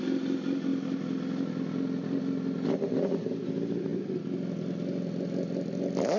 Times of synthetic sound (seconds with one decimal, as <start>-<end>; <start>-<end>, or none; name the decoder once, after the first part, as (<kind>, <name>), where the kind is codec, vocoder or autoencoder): none